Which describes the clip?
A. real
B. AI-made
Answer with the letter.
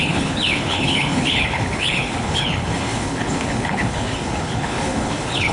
B